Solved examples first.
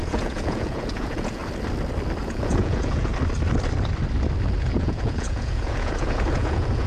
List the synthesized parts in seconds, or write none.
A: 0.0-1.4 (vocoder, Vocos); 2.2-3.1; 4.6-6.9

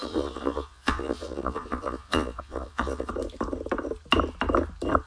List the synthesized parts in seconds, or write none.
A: 0.0-3.1 (vocoder, Vocos)

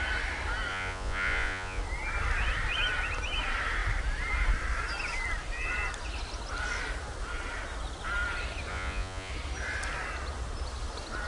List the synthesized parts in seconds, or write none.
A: 0.7-1.8 (vocoder, Vocos); 8.7-9.3

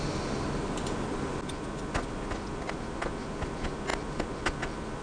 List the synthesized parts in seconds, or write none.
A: none

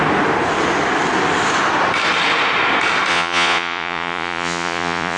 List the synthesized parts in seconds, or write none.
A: 3.1-5.2 (vocoder, Vocos)

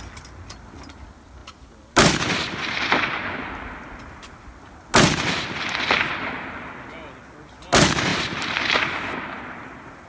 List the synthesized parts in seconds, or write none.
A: none

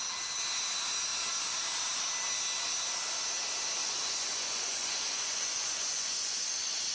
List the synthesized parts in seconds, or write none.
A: 3.8-6.9 (vocoder, Vocos)